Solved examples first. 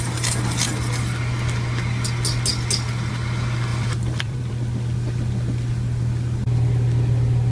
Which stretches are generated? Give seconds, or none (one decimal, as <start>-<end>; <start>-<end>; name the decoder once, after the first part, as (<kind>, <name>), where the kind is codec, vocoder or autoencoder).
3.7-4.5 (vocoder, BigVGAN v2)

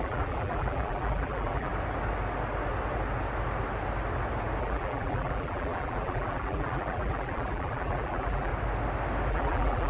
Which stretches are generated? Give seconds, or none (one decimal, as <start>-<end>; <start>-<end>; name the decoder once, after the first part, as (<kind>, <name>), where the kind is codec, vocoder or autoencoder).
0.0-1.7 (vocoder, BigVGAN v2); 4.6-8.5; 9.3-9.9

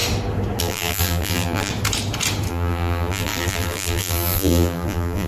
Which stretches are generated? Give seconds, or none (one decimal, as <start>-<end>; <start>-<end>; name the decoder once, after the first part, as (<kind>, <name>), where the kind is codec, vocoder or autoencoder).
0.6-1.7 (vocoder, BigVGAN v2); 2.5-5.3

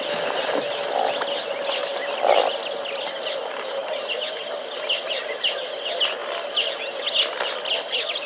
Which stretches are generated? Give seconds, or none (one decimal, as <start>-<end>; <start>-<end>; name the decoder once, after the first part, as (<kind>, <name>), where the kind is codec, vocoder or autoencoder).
1.9-3.0 (vocoder, BigVGAN v2)